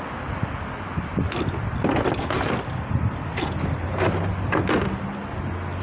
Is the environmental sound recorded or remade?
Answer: recorded